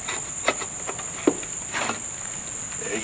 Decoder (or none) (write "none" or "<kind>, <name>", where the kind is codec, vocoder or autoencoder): none